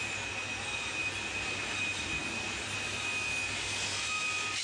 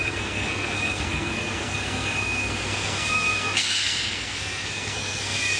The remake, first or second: second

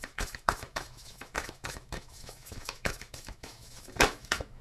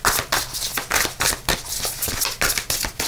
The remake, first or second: first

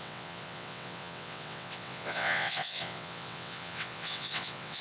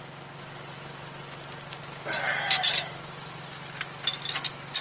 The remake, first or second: first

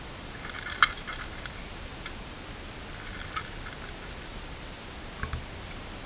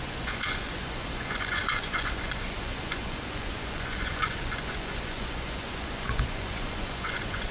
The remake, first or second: second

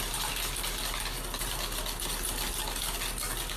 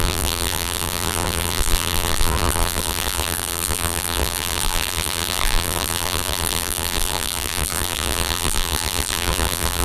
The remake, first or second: second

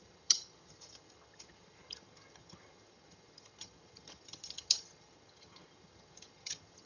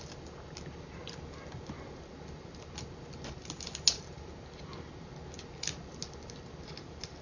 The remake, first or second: first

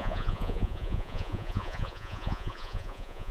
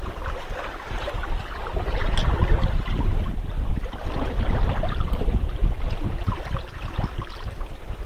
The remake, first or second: first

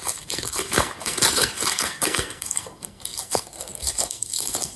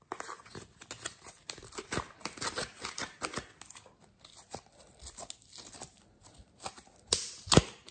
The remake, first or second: first